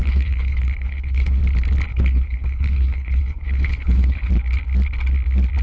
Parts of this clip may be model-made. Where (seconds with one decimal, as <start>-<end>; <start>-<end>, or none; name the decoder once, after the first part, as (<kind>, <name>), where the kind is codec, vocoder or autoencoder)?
0.0-1.4 (codec, HILCodec); 1.9-4.3